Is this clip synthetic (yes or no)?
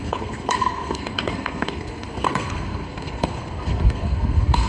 yes